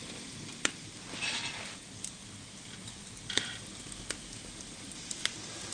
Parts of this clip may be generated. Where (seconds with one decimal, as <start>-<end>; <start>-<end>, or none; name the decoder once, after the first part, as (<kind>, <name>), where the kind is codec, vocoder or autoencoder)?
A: none